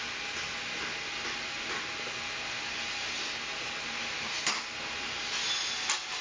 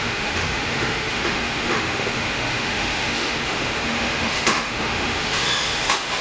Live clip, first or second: first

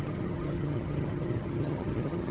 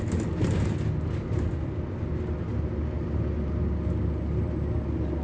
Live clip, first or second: second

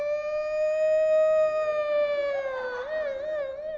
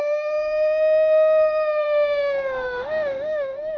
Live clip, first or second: first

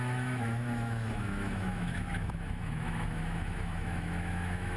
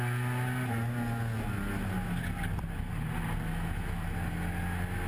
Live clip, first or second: second